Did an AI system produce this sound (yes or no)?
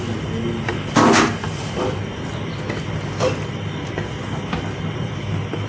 no